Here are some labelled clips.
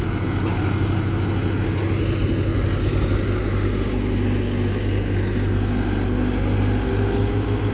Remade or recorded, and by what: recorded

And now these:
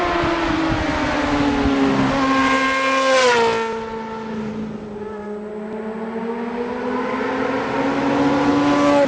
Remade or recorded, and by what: recorded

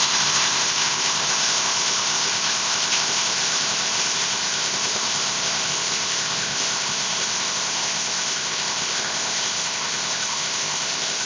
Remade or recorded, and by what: remade, codec, ZipCodec